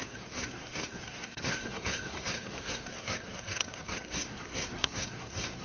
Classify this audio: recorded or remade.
remade